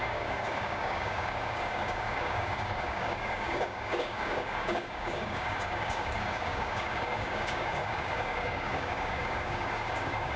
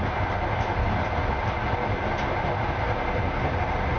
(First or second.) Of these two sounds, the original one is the second